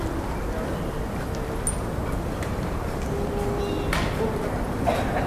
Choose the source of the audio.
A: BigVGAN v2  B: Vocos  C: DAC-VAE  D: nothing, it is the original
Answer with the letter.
D